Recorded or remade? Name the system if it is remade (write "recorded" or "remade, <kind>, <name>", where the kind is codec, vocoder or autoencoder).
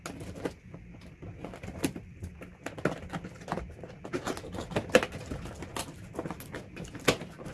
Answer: recorded